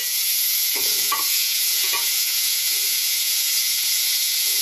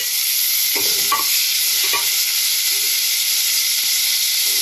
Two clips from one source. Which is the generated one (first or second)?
first